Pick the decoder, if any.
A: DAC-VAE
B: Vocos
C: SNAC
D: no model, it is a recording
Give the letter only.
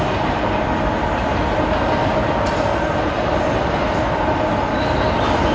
D